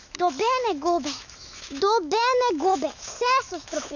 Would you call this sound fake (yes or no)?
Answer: yes